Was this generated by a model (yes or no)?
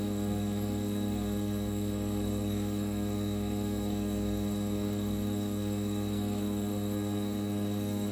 yes